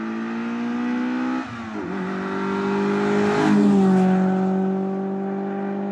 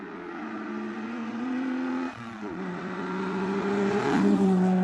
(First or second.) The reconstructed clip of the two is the second